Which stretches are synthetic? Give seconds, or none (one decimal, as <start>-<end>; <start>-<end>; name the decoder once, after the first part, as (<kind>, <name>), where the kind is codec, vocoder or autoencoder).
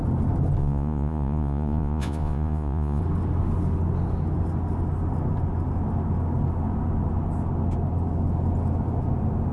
0.6-3.0 (vocoder, Vocos)